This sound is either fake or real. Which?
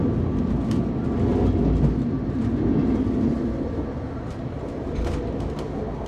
real